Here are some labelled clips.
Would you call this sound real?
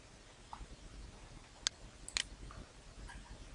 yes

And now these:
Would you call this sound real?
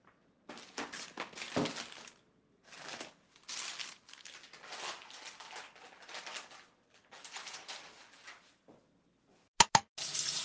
yes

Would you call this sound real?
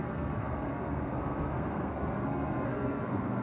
no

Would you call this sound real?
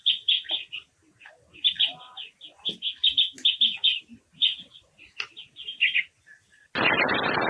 yes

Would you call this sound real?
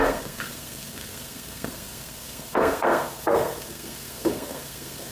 no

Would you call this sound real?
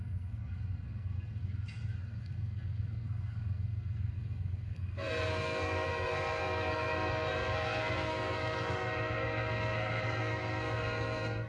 no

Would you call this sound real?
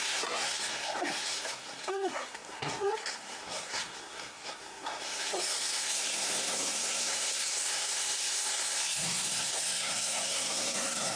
no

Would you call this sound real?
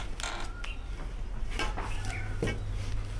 yes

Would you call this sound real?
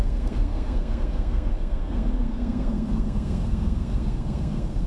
no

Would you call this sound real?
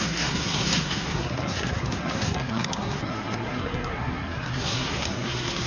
no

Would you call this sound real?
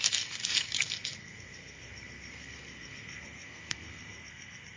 no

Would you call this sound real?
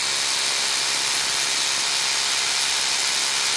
yes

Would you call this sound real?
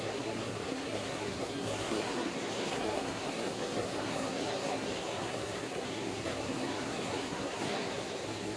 no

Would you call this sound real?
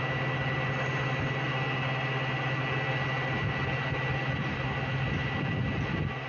yes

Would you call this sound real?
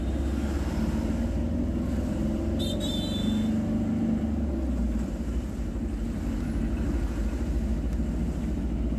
yes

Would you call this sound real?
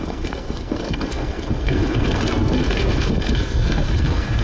no